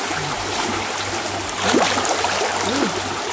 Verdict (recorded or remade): recorded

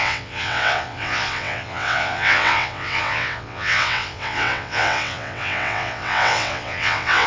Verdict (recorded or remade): remade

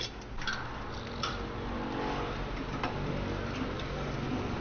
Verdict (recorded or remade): recorded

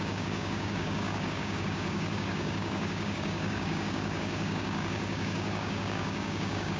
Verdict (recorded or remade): remade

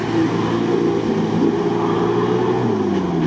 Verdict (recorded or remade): recorded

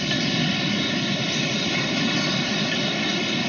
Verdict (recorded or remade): recorded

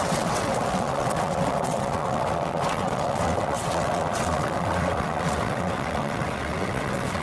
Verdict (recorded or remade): remade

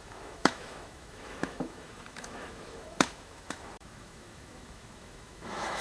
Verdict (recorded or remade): remade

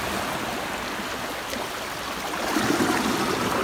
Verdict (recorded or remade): recorded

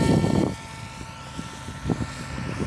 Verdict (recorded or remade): recorded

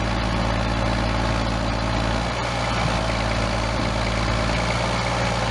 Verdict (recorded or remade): recorded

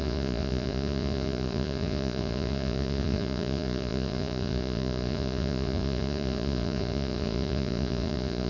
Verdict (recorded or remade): remade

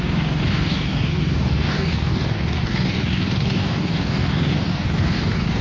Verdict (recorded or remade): remade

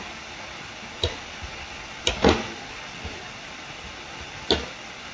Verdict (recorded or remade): recorded